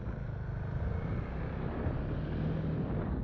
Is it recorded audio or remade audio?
recorded